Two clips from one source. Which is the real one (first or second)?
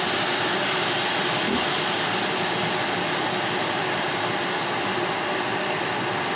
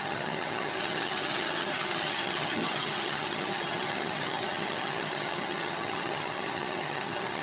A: first